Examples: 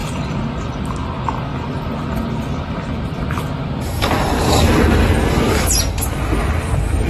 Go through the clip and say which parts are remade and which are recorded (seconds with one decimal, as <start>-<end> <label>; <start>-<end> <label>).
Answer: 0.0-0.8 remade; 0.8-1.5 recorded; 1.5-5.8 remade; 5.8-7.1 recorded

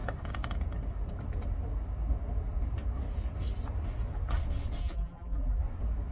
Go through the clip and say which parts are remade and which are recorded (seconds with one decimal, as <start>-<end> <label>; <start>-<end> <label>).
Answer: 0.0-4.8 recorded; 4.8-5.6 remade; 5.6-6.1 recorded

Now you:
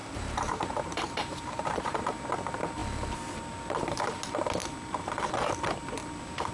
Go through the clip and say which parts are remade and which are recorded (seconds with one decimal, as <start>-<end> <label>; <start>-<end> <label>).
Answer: 0.0-2.2 remade; 2.2-6.5 recorded